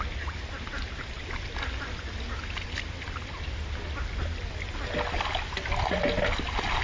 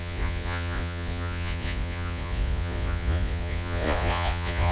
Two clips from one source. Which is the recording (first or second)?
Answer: first